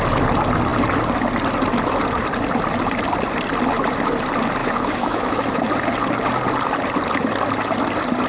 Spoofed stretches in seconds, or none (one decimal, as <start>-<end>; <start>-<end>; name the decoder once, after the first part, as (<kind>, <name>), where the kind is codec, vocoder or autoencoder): 4.6-5.6 (autoencoder, DAC-VAE)